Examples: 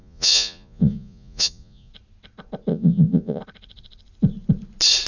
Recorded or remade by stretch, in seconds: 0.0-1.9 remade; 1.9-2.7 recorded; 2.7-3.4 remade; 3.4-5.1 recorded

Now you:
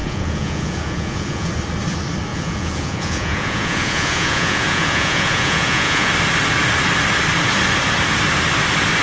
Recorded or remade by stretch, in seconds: 0.0-1.5 remade; 1.5-2.3 recorded; 2.3-6.1 remade; 6.1-9.0 recorded

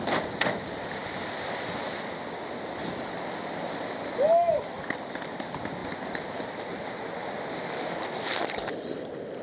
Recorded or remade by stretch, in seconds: 0.0-9.4 recorded

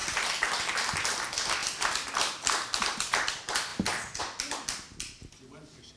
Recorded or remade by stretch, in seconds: 0.0-6.0 recorded

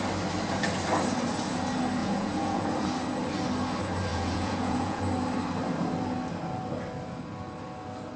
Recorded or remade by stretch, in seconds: 0.0-2.0 recorded; 2.0-2.7 remade; 2.7-4.1 recorded; 4.1-5.0 remade; 5.0-8.2 recorded

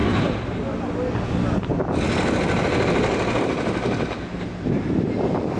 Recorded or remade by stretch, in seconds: 0.0-5.6 recorded

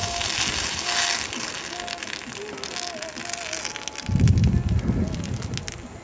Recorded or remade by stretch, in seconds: 0.0-6.0 recorded

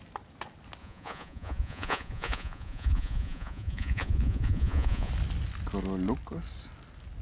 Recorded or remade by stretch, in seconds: 0.0-0.8 recorded; 0.8-5.1 remade; 5.1-7.2 recorded